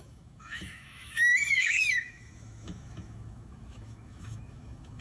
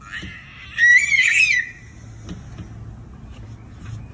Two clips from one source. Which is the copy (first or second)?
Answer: first